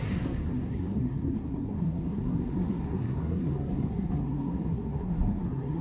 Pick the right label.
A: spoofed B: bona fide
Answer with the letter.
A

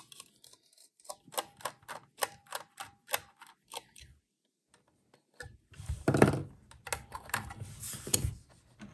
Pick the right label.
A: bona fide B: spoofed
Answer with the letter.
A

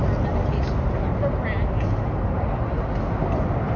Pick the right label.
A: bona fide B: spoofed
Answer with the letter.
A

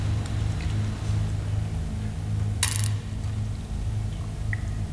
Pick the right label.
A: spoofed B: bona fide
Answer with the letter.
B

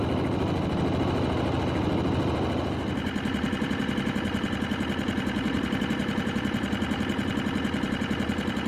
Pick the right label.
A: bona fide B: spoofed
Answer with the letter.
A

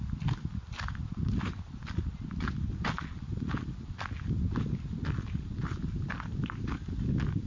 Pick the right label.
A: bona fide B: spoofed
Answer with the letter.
A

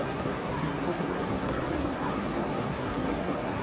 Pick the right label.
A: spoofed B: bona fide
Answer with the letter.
A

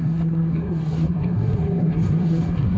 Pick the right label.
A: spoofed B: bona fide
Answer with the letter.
A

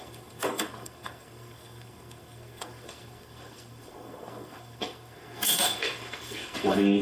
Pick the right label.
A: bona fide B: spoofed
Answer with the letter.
B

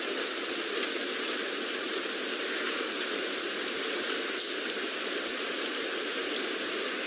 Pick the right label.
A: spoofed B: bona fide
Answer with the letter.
B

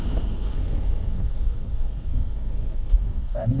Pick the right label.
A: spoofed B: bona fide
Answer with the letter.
A